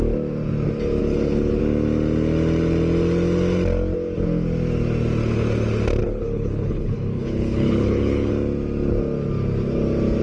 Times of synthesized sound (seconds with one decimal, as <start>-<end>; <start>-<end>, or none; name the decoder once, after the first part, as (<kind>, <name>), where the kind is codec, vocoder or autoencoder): 1.0-1.6 (codec, HILCodec); 6.0-8.3